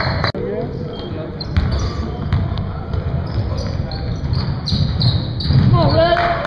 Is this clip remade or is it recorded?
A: recorded